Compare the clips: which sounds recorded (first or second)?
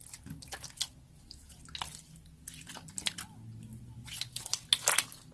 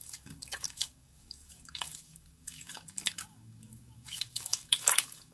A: first